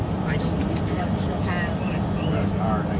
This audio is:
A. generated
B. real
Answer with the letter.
B